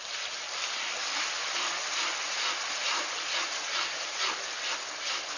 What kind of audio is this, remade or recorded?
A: recorded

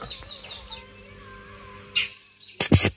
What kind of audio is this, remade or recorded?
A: recorded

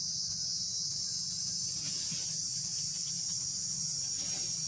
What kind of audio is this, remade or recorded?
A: recorded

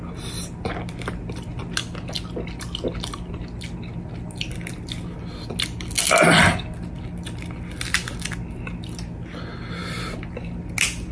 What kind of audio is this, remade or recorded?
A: recorded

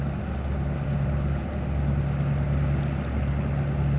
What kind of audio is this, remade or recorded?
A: recorded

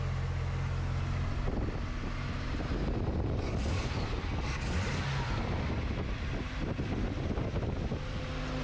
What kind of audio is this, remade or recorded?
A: recorded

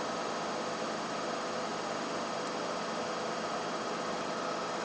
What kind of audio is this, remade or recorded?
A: recorded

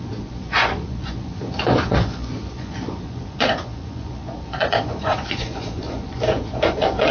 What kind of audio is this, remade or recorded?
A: remade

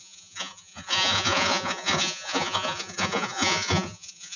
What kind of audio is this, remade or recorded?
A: remade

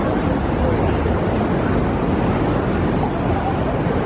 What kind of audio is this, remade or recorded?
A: recorded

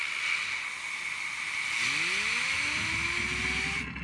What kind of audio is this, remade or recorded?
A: recorded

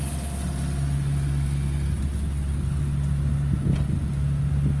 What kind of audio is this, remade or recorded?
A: recorded